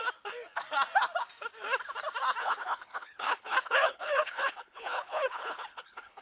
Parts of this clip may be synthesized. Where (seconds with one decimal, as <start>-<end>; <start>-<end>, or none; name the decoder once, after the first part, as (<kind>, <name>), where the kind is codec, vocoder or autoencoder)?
2.4-6.2 (codec, HILCodec)